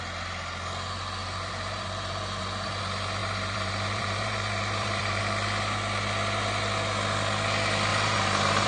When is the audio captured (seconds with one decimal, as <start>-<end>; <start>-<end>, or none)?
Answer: 0.0-1.2; 2.8-3.2; 5.2-7.9